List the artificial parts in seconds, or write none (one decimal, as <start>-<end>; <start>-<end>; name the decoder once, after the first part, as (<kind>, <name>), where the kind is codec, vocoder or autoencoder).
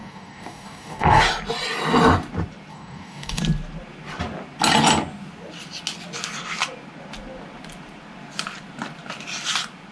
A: 0.0-1.2 (codec, DAC); 2.7-3.4